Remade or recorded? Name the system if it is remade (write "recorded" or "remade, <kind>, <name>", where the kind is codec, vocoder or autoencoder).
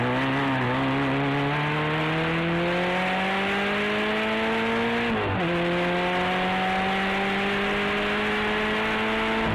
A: recorded